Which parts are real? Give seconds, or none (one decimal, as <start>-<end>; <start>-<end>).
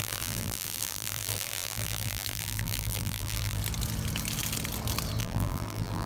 3.6-5.2